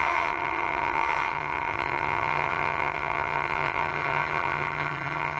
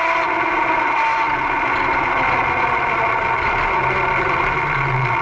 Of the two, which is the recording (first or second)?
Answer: second